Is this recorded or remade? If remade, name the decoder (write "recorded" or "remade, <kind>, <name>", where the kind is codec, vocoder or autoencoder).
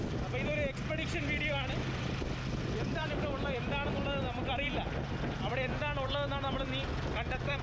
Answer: recorded